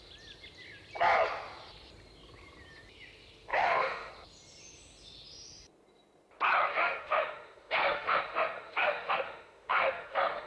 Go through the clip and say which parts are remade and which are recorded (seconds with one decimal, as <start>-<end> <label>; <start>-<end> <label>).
0.0-3.5 recorded; 3.5-4.1 remade; 4.1-6.7 recorded; 6.7-10.5 remade